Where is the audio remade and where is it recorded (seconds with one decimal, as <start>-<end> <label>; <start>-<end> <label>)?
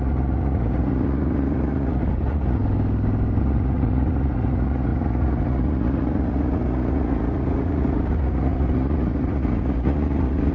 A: 0.0-2.6 remade; 2.6-3.4 recorded; 3.4-10.5 remade